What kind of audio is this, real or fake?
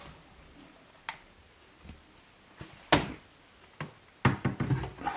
real